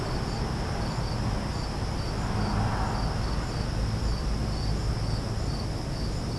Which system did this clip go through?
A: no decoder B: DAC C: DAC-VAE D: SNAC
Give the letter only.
A